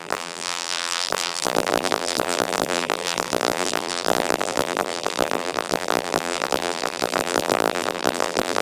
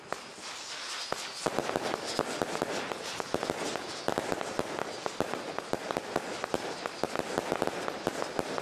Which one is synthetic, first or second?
first